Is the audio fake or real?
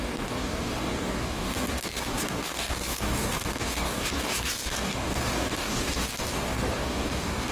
fake